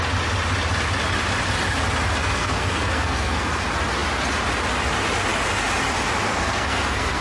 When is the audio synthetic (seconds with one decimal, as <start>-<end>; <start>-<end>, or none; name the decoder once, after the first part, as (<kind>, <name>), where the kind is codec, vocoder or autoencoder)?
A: 2.2-3.5 (codec, SNAC); 6.3-7.2